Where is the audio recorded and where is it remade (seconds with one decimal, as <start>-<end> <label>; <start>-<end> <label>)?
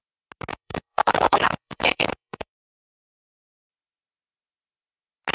0.0-0.5 recorded; 0.5-3.7 remade; 3.7-5.3 recorded